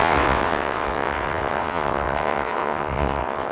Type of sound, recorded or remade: remade